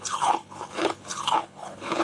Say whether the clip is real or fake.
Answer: fake